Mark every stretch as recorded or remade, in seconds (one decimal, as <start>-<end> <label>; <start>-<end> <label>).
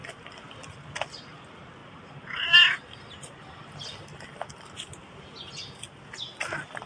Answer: 0.0-6.9 recorded